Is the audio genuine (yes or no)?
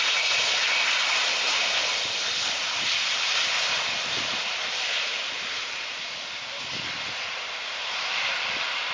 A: no